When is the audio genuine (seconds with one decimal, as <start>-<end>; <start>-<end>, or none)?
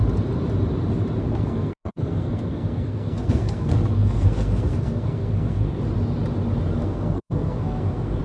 0.0-1.2; 5.8-6.8